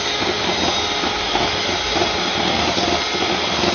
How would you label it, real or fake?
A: real